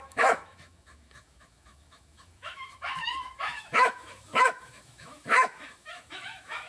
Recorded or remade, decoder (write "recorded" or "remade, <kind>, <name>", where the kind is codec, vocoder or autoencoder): remade, autoencoder, DAC-VAE